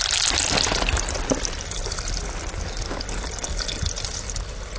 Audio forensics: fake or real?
real